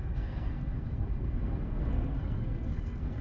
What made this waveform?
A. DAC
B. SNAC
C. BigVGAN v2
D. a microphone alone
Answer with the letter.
B